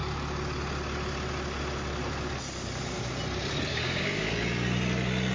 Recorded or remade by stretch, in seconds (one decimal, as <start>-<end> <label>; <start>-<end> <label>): 0.0-3.7 recorded; 3.7-4.3 remade; 4.3-5.3 recorded